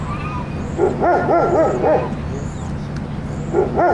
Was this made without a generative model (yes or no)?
yes